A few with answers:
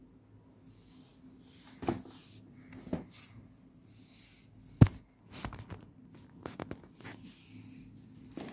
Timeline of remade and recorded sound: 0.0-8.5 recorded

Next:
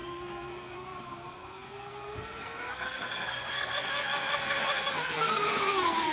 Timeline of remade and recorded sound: 0.0-6.1 remade

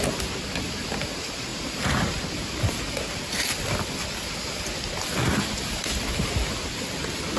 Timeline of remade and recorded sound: 0.0-7.4 recorded

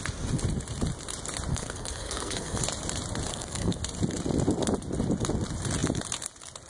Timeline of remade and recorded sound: 0.0-1.5 recorded; 1.5-2.6 remade; 2.6-3.3 recorded; 3.3-3.8 remade; 3.8-6.7 recorded

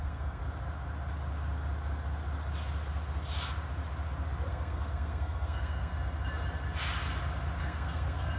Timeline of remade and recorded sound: 0.0-0.4 remade; 0.4-4.5 recorded; 4.5-5.9 remade; 5.9-7.6 recorded; 7.6-8.4 remade